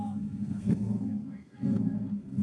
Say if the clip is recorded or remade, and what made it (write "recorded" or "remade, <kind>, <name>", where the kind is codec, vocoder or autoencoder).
remade, codec, SNAC